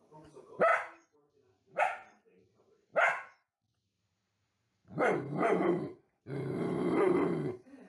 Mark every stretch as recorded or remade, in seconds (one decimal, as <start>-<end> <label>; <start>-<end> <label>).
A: 0.0-0.7 remade; 0.7-1.8 recorded; 1.8-2.9 remade; 2.9-4.0 recorded; 4.0-7.9 remade

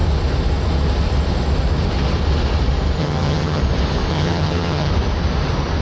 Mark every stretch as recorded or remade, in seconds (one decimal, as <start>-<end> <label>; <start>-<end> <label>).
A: 0.0-3.0 recorded; 3.0-3.6 remade; 3.6-4.1 recorded; 4.1-4.9 remade; 4.9-5.8 recorded